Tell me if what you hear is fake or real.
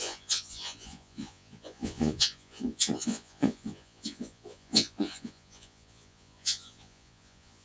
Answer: fake